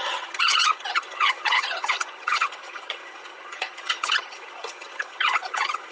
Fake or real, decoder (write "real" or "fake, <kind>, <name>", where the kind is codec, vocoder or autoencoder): fake, vocoder, HiFi-GAN